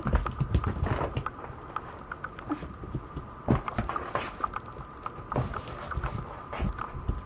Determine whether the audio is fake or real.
real